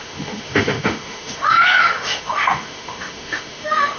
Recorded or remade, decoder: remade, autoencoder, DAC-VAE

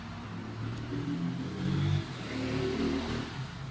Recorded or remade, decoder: recorded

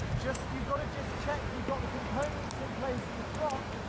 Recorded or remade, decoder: recorded